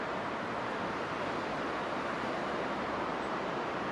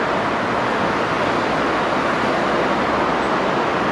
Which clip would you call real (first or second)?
second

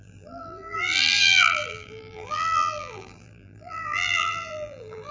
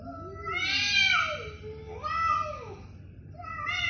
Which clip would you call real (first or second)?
second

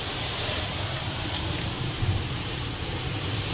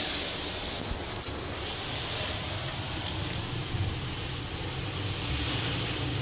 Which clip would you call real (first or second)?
second